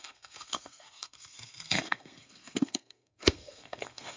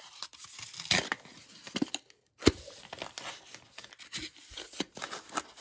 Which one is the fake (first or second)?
first